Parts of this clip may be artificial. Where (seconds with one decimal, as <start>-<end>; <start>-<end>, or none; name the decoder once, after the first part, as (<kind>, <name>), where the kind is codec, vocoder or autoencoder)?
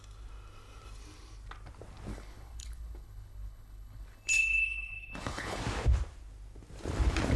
2.1-5.6 (codec, HILCodec)